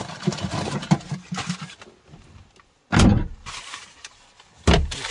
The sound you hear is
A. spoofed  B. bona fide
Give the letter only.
B